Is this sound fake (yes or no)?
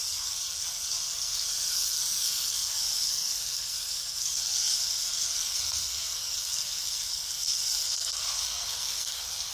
yes